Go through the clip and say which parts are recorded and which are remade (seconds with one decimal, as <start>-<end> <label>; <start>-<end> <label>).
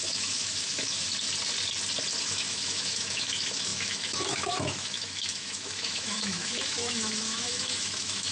0.0-1.1 remade; 1.1-2.2 recorded; 2.2-8.3 remade